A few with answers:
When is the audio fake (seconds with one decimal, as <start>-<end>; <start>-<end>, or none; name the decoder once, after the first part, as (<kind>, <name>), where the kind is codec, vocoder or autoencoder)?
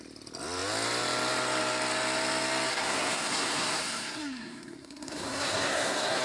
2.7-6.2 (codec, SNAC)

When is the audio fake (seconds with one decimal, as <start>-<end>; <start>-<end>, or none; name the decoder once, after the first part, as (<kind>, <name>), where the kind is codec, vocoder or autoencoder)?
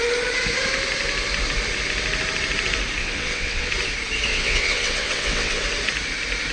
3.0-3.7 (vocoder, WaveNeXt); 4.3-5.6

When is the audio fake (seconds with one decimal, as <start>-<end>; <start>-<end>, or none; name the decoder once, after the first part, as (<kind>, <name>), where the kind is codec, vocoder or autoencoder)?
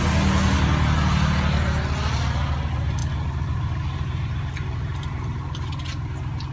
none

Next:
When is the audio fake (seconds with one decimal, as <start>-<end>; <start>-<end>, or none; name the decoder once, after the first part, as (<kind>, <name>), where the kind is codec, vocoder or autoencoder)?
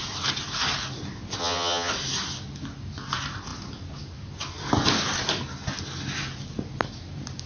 1.4-1.9 (vocoder, HiFi-GAN)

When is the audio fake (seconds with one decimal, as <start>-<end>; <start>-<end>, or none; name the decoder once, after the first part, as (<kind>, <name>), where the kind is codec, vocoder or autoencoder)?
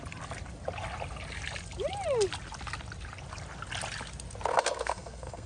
4.5-5.5 (codec, SNAC)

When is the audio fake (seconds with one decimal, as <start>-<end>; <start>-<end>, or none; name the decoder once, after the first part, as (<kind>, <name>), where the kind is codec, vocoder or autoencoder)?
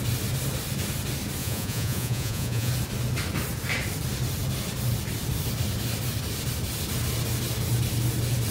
1.4-2.7 (vocoder, Vocos)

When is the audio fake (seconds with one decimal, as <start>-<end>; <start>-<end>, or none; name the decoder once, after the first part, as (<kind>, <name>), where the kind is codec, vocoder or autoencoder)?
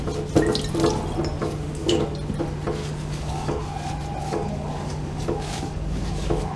1.4-2.0 (codec, DAC); 2.8-3.6; 4.2-6.6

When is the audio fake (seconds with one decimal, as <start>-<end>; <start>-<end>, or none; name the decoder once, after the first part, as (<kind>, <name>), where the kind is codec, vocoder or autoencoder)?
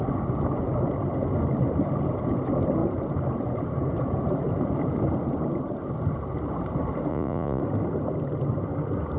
7.1-7.6 (vocoder, Vocos)